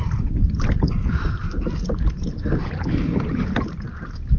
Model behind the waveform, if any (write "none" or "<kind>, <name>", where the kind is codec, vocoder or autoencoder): none